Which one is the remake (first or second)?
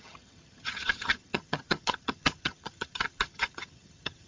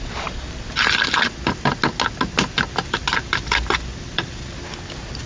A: first